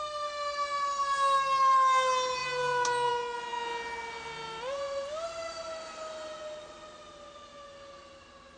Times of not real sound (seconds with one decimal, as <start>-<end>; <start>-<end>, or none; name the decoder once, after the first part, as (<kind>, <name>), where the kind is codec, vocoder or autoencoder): none